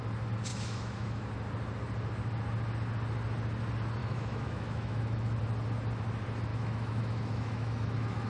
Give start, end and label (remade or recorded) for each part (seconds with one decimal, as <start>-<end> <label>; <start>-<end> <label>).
0.0-0.5 recorded; 0.5-1.3 remade; 1.3-4.0 recorded; 4.0-5.4 remade; 5.4-6.5 recorded; 6.5-8.3 remade